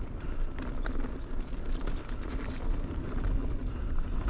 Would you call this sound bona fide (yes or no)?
yes